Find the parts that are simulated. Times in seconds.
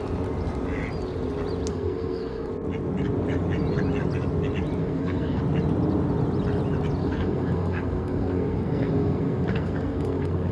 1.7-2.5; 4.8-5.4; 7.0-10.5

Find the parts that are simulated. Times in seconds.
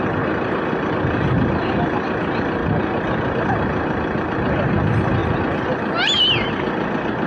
none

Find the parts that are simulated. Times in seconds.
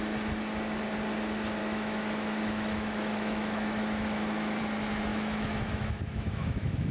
1.6-4.6; 5.1-6.9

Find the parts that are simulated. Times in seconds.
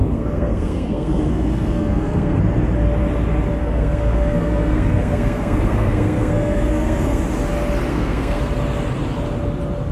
0.0-2.4; 3.6-7.2; 7.9-8.4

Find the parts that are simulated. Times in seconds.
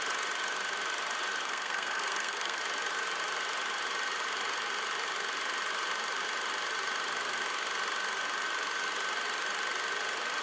1.4-2.6